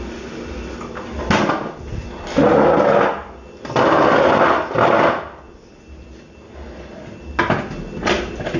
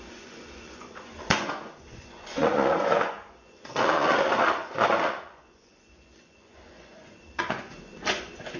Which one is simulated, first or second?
second